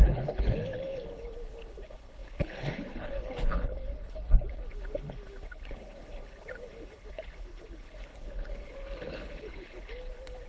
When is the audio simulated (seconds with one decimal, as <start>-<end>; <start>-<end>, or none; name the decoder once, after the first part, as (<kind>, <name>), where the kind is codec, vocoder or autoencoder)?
0.0-10.5 (codec, HILCodec)